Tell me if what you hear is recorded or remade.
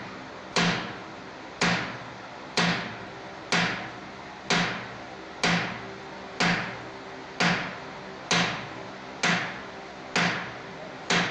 recorded